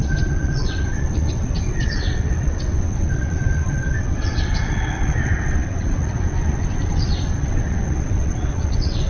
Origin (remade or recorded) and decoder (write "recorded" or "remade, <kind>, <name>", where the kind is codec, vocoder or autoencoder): remade, vocoder, WaveNeXt